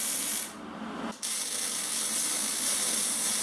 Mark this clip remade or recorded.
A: recorded